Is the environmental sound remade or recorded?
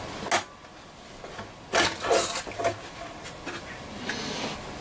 recorded